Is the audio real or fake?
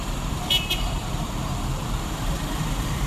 fake